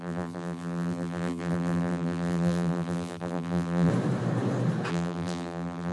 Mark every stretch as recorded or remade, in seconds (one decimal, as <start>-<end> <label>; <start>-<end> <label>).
0.0-3.9 remade; 3.9-4.9 recorded; 4.9-5.9 remade